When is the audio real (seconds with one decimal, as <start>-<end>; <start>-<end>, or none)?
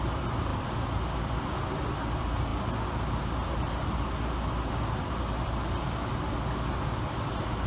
0.0-7.7